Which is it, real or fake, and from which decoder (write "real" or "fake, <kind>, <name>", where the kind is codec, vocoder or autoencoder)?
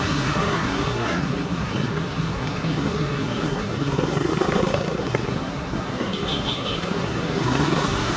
fake, codec, SNAC